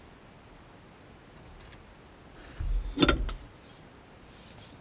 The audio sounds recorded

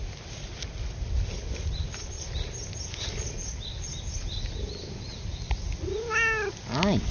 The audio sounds recorded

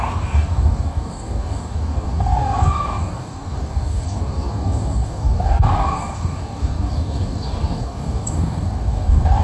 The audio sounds remade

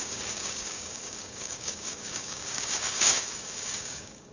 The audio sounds remade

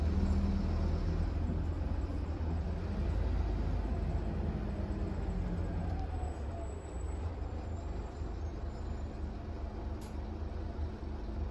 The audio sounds recorded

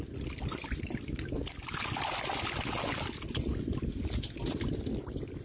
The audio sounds recorded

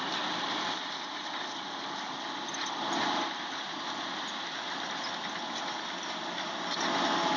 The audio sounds recorded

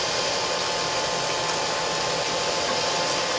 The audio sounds recorded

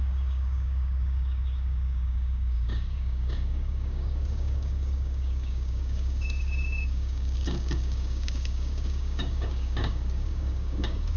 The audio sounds remade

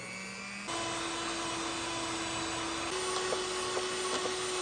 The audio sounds recorded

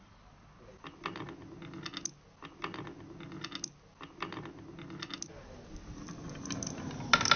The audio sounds recorded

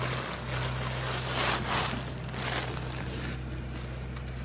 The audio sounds recorded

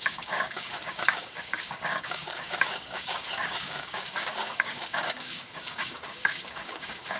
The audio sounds remade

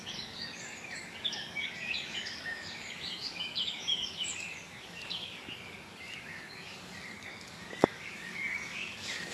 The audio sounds remade